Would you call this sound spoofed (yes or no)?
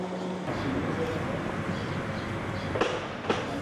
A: no